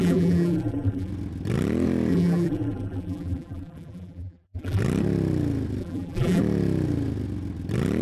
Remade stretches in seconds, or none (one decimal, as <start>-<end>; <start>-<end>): 0.0-1.1; 2.1-4.8; 5.8-6.4